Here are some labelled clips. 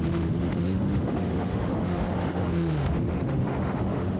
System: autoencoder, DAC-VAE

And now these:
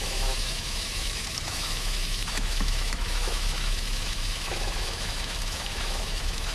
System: autoencoder, DAC-VAE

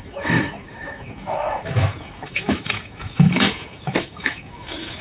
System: autoencoder, DAC-VAE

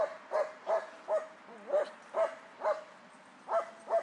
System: none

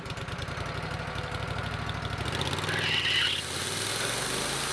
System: none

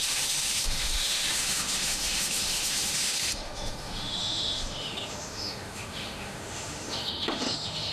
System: autoencoder, DAC-VAE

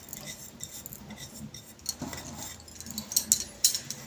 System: none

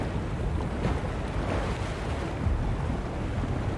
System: none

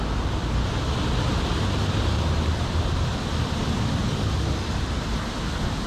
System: none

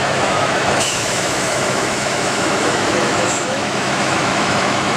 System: autoencoder, DAC-VAE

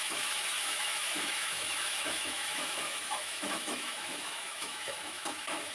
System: autoencoder, DAC-VAE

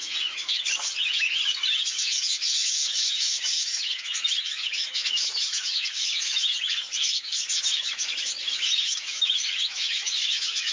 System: autoencoder, DAC-VAE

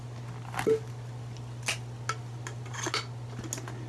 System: none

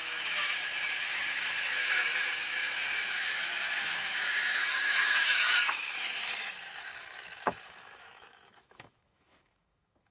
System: autoencoder, DAC-VAE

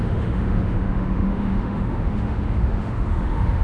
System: autoencoder, DAC-VAE